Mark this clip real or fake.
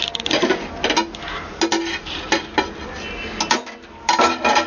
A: real